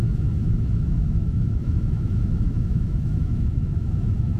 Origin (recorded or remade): remade